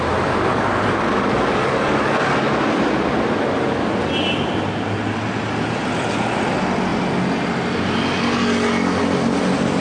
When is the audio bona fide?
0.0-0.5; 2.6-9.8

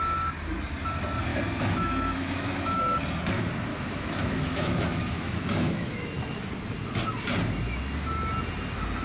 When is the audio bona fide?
0.0-1.3; 2.8-3.7; 6.4-9.0

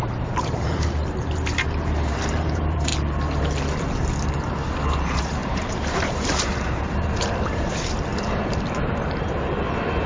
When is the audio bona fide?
2.9-4.9; 8.1-8.7

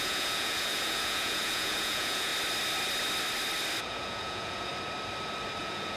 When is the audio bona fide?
2.3-3.8; 4.7-5.6

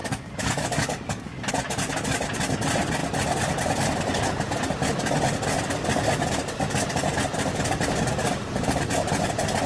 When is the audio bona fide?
1.5-8.2; 8.9-9.7